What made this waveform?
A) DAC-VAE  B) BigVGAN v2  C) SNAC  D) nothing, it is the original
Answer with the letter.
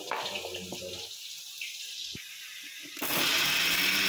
D